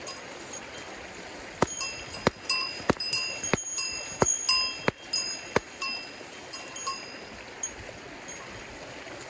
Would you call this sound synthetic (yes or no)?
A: no